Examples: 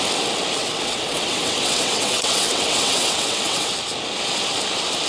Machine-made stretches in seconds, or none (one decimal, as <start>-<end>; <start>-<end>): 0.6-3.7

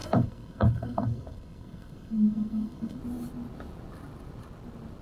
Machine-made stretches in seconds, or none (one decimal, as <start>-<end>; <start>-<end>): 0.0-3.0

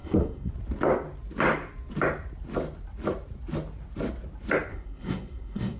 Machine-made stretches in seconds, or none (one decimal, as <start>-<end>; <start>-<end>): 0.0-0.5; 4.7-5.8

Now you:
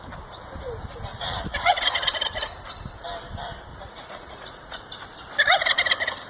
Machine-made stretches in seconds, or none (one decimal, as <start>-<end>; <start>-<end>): 1.1-2.1; 3.7-4.8

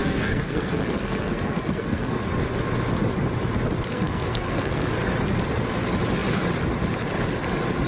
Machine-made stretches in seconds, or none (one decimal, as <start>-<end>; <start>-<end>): 0.0-2.2; 3.9-4.9

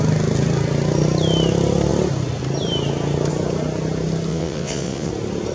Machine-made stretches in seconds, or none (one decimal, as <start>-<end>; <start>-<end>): 4.3-5.1

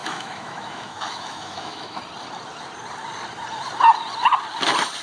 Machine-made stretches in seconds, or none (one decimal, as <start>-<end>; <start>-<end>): 0.0-2.0